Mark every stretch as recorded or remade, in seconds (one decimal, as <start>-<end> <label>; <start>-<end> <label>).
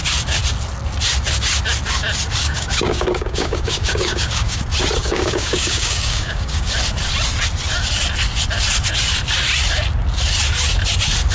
0.0-2.4 recorded; 2.4-4.6 remade; 4.6-5.0 recorded; 5.0-6.7 remade; 6.7-11.3 recorded